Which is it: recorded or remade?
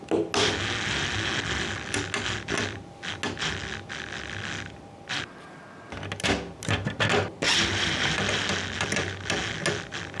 recorded